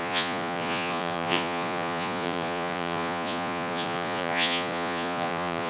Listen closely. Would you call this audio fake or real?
fake